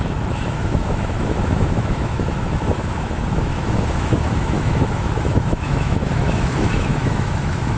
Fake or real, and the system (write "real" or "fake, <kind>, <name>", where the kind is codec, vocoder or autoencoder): fake, autoencoder, DAC-VAE